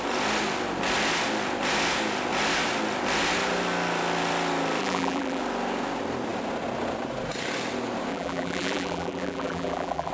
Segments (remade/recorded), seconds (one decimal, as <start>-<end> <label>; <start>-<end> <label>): 0.0-4.8 recorded; 4.8-5.4 remade; 5.4-8.1 recorded; 8.1-10.1 remade